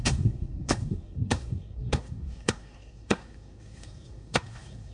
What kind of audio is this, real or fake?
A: fake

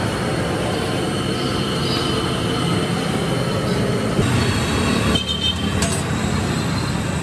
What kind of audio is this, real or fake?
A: real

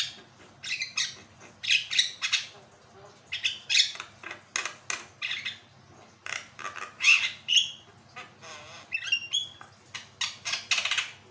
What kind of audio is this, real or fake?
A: real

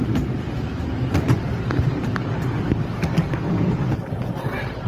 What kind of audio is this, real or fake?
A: real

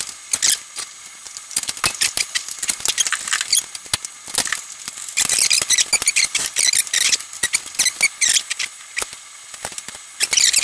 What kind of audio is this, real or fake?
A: real